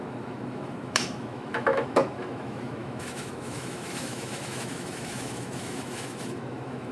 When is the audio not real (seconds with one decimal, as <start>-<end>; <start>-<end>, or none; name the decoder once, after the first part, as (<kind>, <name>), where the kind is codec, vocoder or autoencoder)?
0.0-6.9 (autoencoder, DAC-VAE)